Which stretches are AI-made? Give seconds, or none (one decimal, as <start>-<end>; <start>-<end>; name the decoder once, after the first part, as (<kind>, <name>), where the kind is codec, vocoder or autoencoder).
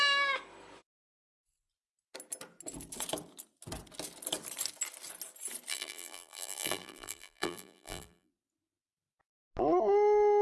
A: 5.7-8.3 (vocoder, BigVGAN v2)